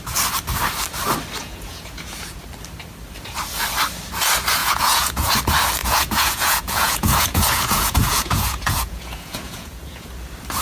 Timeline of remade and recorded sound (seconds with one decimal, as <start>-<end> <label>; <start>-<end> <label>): 0.0-1.4 recorded; 1.4-2.4 remade; 2.4-4.6 recorded; 4.6-5.3 remade; 5.3-5.8 recorded; 5.8-10.1 remade; 10.1-10.6 recorded